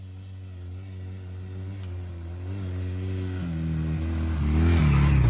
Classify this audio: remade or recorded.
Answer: recorded